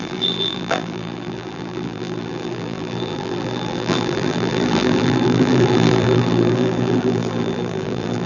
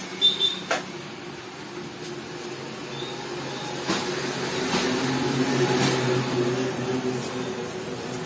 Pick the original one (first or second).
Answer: second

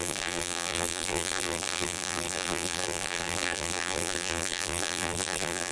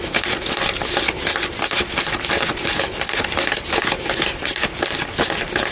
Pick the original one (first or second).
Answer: second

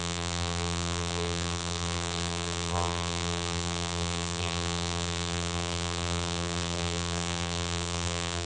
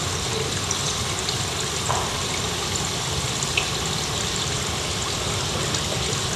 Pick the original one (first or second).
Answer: second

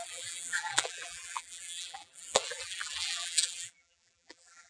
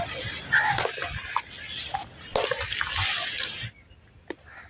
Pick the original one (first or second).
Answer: second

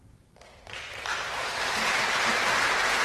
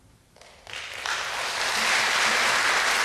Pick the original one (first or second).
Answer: second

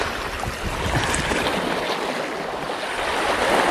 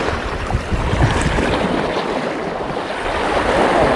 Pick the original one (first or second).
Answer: first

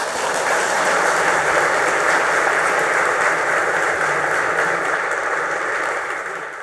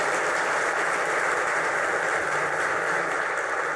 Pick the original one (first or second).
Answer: second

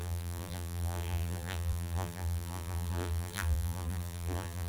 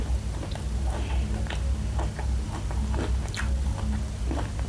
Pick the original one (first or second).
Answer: second